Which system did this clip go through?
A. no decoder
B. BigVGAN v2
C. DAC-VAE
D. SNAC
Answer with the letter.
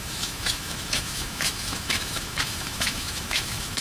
C